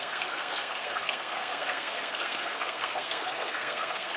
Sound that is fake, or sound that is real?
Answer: fake